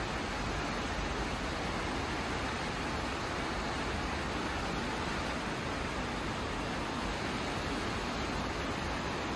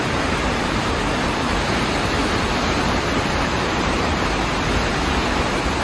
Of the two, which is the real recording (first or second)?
first